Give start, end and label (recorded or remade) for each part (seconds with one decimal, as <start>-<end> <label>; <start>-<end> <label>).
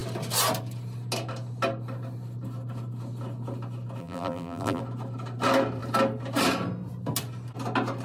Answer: 0.0-4.0 recorded; 4.0-4.8 remade; 4.8-8.0 recorded